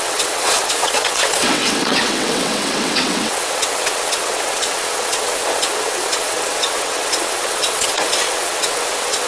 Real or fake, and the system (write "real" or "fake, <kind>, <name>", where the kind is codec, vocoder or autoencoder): fake, vocoder, WaveNeXt